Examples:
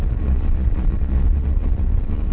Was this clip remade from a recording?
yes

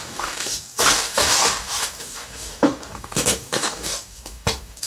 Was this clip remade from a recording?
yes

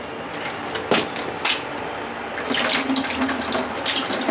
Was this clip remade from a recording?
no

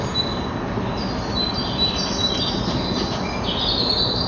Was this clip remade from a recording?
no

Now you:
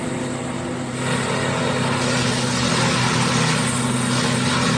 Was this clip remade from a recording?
no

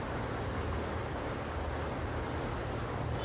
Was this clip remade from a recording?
no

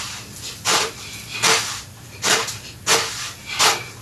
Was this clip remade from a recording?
no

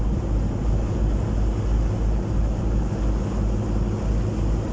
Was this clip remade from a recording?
no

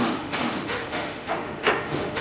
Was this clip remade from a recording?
yes